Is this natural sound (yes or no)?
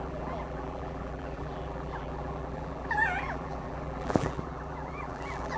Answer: no